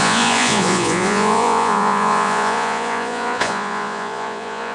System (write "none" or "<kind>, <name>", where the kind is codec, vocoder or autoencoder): vocoder, Vocos